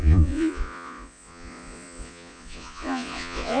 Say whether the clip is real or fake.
fake